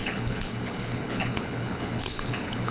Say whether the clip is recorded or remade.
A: remade